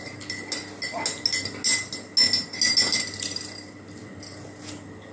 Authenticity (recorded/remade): recorded